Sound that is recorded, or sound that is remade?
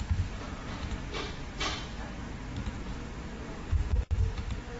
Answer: recorded